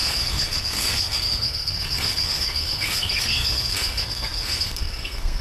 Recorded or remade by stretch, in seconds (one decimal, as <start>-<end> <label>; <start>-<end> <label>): 0.0-5.4 remade